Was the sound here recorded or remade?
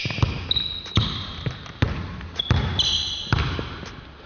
recorded